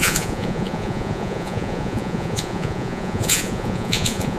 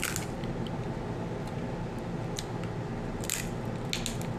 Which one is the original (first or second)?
second